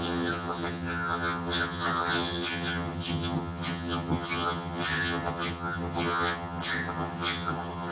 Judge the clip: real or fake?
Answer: fake